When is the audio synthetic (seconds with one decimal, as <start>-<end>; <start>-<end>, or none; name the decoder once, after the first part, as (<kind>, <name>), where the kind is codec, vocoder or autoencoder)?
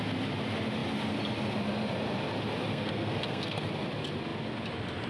2.7-3.7 (codec, SNAC)